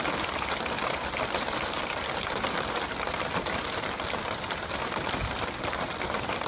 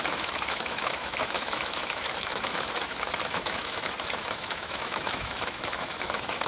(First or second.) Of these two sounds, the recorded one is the first